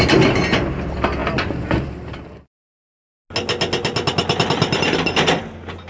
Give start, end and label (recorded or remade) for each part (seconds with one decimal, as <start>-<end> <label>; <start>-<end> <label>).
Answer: 0.0-5.9 recorded